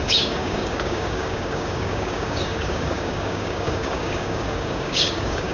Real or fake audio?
fake